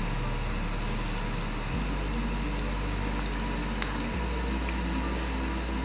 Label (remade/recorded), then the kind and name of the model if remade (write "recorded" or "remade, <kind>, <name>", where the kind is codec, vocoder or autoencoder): recorded